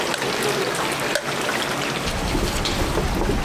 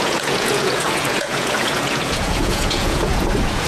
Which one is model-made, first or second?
second